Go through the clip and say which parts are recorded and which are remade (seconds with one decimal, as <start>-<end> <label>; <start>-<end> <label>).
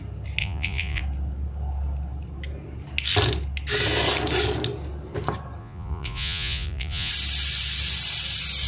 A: 0.0-0.4 recorded; 0.4-1.0 remade; 1.0-5.6 recorded; 5.6-7.1 remade; 7.1-8.7 recorded